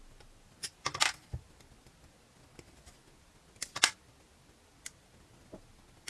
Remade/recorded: recorded